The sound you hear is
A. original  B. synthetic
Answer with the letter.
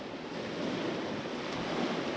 A